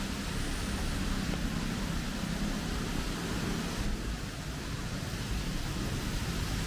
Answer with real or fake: real